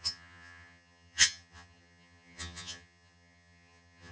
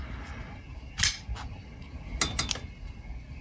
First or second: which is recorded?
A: second